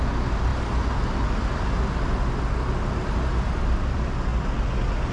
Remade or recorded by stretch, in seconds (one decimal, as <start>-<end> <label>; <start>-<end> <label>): 0.0-5.1 recorded